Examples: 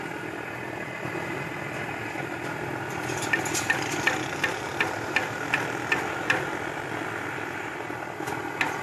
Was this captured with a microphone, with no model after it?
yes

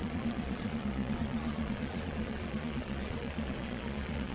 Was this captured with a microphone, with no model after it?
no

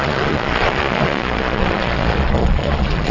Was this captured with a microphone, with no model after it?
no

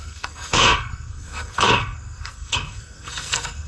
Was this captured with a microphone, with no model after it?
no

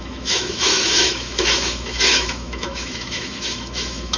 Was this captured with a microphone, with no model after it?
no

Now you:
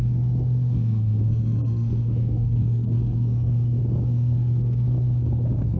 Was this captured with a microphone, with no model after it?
no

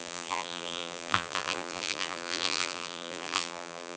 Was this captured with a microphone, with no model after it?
no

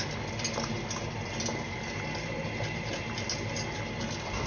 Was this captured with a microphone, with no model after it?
yes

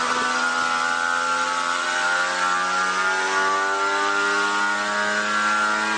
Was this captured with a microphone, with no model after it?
yes